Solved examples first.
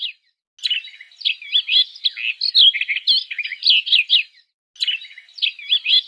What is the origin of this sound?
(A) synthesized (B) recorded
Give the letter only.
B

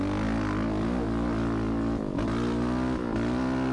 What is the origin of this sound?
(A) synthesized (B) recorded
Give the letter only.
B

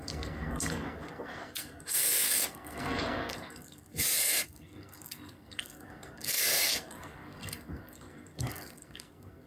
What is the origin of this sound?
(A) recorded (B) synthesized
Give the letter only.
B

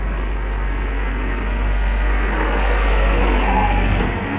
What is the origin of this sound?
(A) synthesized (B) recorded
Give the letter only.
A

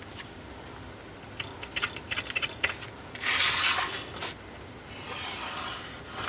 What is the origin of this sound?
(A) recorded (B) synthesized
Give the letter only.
A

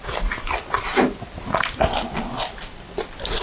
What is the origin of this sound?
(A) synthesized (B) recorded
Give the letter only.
B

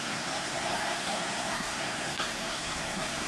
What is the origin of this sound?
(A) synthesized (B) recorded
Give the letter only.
A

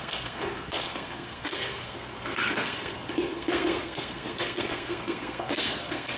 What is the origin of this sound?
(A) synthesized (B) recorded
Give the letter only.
A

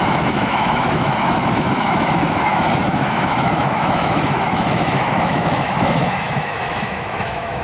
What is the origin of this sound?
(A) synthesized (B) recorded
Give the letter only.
A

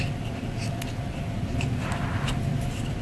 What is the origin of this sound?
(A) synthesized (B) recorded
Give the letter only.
B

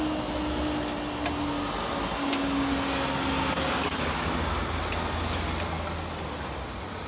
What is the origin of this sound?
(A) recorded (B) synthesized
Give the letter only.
A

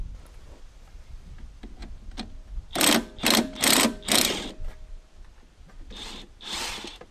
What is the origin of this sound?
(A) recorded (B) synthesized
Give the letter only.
A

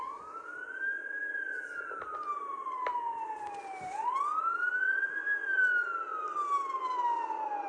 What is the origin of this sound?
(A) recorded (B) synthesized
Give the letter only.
A